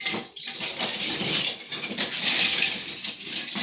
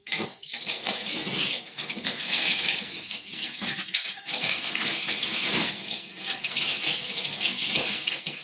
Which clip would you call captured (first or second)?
first